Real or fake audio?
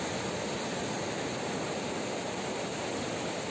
real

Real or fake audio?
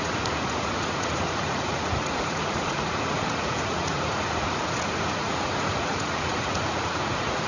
fake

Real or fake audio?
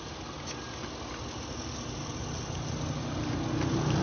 real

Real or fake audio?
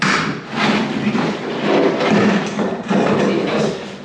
real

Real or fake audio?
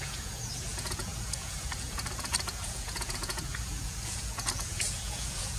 fake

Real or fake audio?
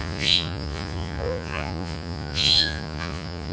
fake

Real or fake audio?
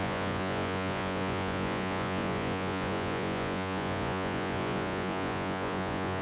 fake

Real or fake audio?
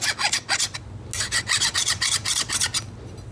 real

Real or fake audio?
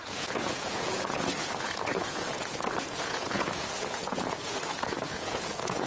fake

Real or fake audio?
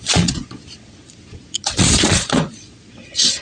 fake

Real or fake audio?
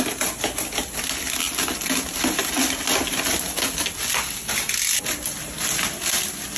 real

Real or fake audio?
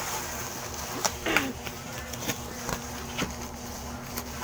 real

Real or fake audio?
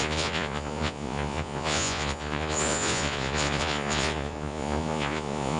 fake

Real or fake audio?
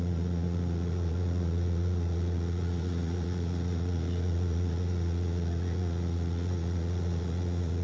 fake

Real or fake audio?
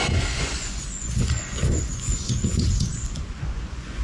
fake